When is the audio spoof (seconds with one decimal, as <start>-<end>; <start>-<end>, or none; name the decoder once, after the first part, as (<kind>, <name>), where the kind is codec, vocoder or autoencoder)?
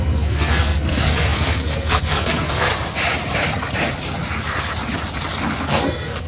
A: 0.0-2.7 (codec, SNAC); 5.6-6.3